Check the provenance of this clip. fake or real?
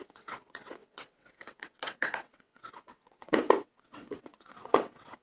fake